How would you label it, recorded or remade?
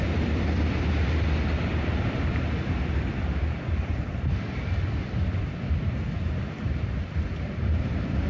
remade